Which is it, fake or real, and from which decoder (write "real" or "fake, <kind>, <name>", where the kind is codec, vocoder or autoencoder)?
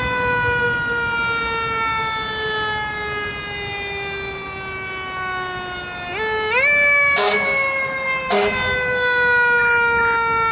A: real